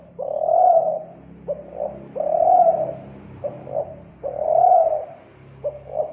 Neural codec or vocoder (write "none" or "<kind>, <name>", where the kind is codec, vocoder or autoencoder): none